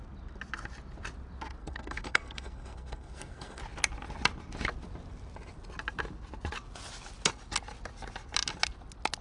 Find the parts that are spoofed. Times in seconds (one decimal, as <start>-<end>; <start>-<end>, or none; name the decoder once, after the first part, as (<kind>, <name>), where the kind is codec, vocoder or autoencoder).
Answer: 1.6-3.6 (codec, SNAC)